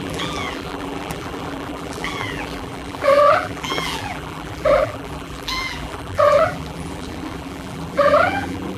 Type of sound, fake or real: fake